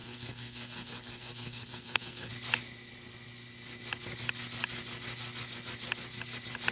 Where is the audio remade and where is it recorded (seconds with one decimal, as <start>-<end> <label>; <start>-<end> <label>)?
0.0-2.3 remade; 2.3-6.7 recorded